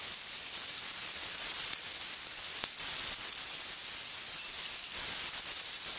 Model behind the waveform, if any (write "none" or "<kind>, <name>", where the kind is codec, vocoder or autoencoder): none